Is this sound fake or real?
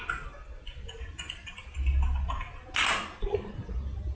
real